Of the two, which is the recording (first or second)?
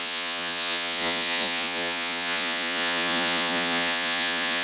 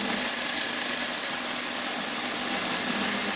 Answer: second